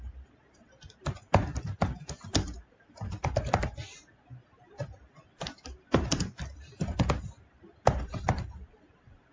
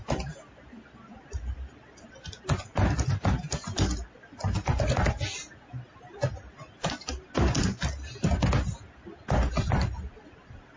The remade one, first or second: first